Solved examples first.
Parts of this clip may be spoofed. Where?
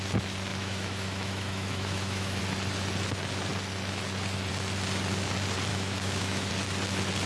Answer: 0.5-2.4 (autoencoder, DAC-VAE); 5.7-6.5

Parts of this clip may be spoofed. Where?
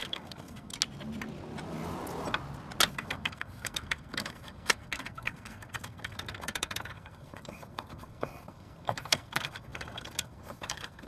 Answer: 0.0-0.7 (codec, SNAC); 2.9-11.1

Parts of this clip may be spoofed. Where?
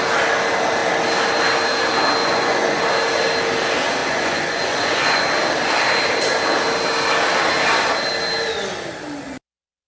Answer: 2.2-2.8 (vocoder, Vocos); 4.0-5.2